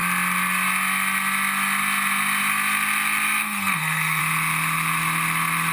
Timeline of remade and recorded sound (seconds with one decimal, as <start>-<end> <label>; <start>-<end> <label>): 0.0-3.4 recorded; 3.4-4.2 remade; 4.2-5.7 recorded